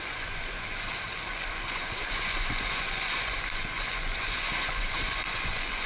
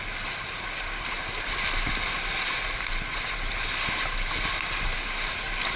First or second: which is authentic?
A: second